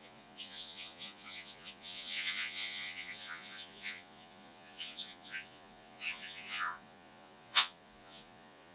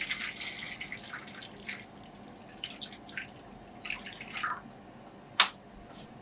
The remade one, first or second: first